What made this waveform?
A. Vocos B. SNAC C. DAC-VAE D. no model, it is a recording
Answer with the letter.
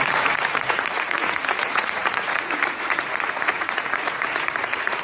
A